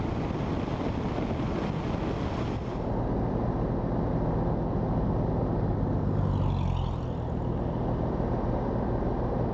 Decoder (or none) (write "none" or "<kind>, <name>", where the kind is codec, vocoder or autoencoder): none